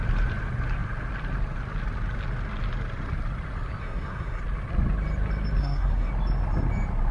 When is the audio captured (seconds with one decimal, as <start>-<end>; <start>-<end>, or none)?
0.0-3.8; 4.4-5.6; 6.1-7.1